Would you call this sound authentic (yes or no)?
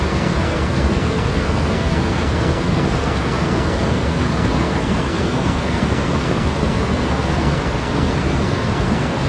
no